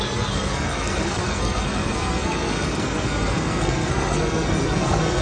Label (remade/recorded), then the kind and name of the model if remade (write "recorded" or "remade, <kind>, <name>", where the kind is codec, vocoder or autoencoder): remade, codec, SNAC